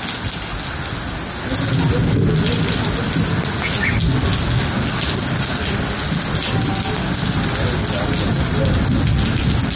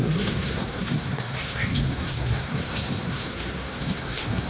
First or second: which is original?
first